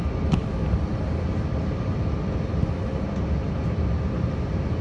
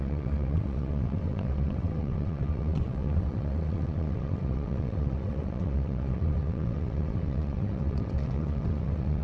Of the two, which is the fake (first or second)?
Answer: second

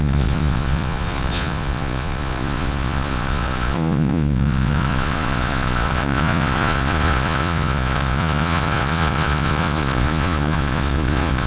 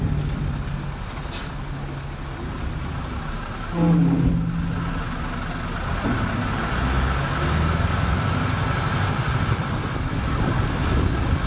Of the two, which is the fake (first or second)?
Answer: first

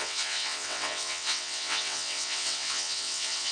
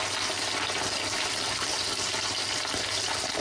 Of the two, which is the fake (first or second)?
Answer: first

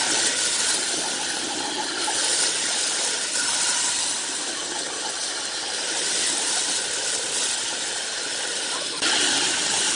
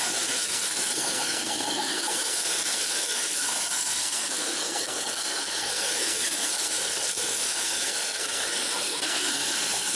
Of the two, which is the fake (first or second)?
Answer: second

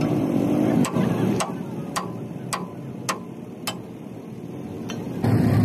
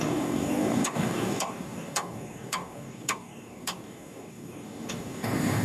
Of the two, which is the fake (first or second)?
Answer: second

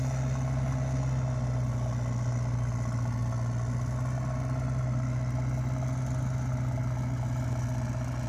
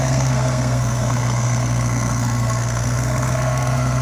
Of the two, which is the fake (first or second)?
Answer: second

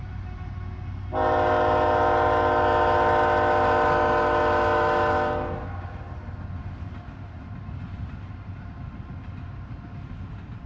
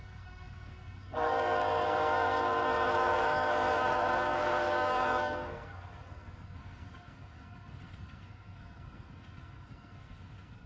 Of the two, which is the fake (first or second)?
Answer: second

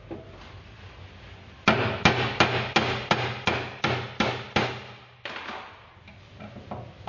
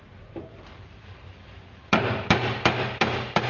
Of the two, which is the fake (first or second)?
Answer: second